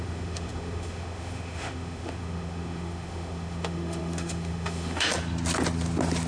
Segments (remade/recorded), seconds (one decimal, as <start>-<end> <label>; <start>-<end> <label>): 0.0-5.1 remade; 5.1-6.3 recorded